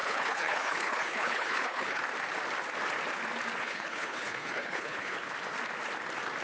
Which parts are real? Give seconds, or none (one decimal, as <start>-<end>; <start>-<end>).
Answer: 2.0-3.6; 5.3-6.4